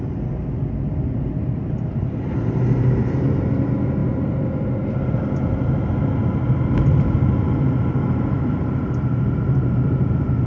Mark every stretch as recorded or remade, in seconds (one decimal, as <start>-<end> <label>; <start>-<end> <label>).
0.0-10.5 recorded